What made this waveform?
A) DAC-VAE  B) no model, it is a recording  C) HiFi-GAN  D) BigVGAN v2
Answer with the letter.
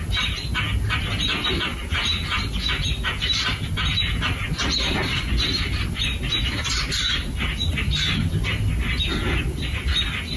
B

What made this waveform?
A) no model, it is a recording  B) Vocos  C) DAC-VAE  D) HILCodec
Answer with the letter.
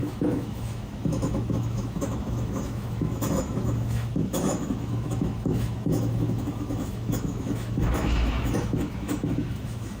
C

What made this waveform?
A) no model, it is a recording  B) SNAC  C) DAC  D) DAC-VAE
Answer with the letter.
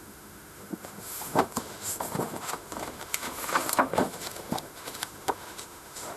D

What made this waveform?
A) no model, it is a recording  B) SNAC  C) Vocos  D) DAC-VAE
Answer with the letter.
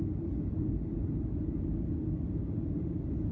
A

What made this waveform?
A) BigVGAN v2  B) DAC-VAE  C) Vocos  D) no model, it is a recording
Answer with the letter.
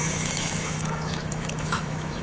B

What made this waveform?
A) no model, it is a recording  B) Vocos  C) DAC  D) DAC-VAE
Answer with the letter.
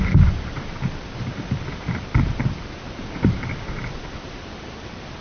A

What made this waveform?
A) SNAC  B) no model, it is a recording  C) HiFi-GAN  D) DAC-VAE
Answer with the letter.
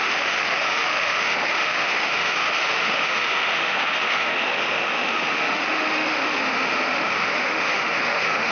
D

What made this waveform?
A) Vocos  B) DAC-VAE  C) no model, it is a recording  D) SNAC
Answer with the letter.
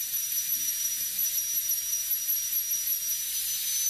C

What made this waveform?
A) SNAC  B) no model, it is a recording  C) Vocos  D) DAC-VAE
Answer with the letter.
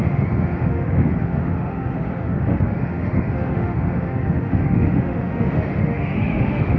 D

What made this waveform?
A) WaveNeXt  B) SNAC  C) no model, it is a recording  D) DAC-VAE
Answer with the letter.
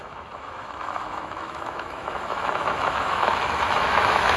D